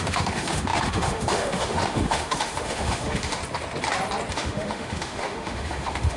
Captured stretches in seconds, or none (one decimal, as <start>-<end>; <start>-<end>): 3.4-4.3